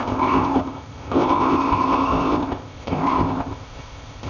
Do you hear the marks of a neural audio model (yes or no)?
yes